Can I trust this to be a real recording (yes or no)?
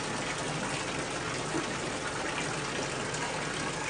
yes